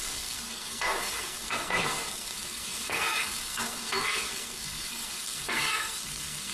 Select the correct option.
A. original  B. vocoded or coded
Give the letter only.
B